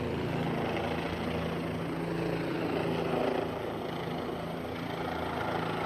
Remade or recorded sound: recorded